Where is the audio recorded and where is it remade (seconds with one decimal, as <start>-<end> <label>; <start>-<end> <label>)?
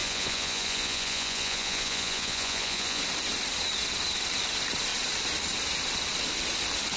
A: 0.0-3.0 remade; 3.0-7.0 recorded